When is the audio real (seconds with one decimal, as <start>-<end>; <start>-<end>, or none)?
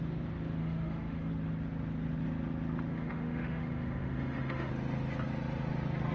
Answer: 0.0-0.6; 1.3-2.9; 4.7-6.1